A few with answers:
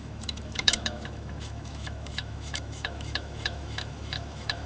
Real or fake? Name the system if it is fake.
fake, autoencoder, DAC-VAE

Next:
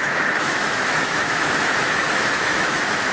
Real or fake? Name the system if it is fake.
fake, autoencoder, DAC-VAE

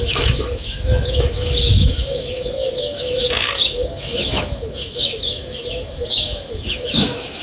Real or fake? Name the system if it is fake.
fake, autoencoder, DAC-VAE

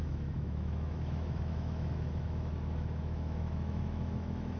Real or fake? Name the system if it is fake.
fake, autoencoder, DAC-VAE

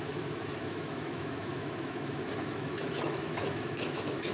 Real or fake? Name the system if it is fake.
fake, autoencoder, DAC-VAE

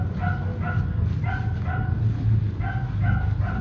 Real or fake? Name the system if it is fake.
real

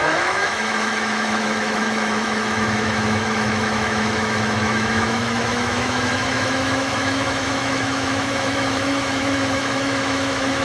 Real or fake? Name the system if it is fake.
fake, autoencoder, DAC-VAE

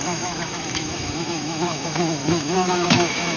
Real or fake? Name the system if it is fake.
fake, autoencoder, DAC-VAE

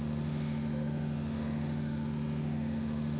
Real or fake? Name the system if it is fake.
fake, autoencoder, DAC-VAE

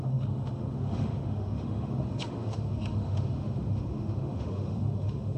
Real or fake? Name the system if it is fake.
fake, autoencoder, DAC-VAE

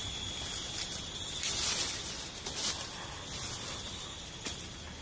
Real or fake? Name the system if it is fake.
real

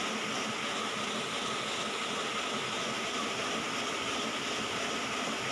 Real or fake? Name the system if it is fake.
real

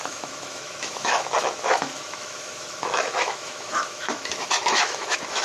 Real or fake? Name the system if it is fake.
fake, autoencoder, DAC-VAE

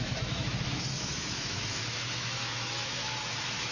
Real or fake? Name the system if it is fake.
fake, autoencoder, DAC-VAE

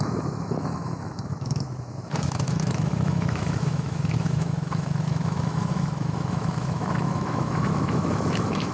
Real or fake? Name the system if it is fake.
fake, autoencoder, DAC-VAE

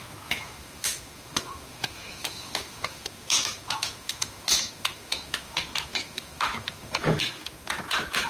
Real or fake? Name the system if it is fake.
fake, autoencoder, DAC-VAE